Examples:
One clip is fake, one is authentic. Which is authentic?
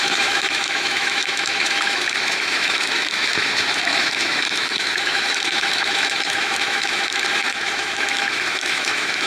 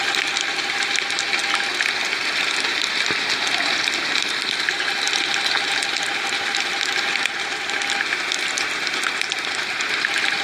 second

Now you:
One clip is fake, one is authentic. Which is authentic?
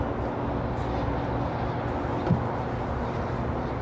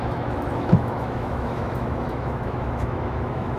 first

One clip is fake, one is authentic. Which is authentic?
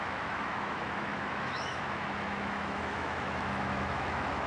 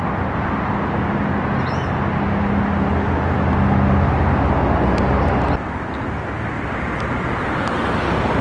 second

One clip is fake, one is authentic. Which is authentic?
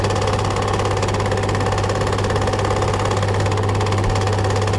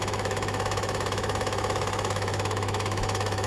first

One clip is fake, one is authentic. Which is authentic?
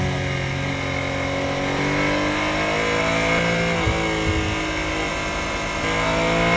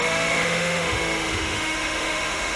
first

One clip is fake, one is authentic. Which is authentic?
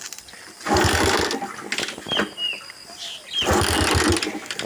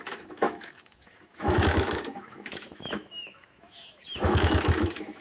first